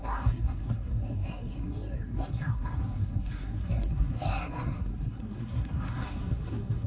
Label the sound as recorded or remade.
remade